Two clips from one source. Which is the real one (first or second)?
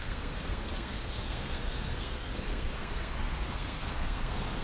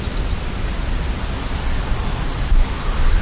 second